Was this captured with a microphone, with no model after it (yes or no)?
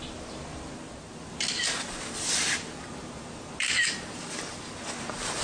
yes